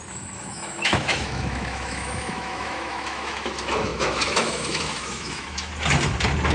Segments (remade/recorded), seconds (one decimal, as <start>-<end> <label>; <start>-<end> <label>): 0.0-5.7 remade; 5.7-6.5 recorded